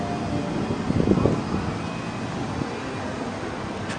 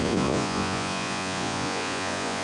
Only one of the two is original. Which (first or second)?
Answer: first